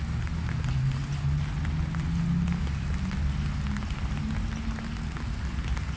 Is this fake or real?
real